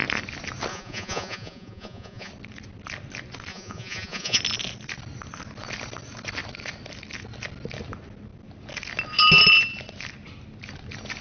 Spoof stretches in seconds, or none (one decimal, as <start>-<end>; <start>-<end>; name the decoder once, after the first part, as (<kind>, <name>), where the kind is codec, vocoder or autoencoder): 0.7-2.3 (vocoder, Vocos); 3.5-4.4